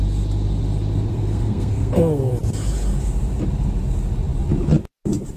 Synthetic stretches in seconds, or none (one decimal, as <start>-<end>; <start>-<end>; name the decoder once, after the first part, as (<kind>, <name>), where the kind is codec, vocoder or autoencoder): 1.1-2.3 (codec, SNAC)